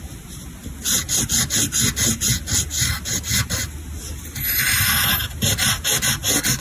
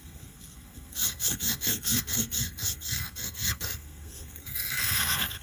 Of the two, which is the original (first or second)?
first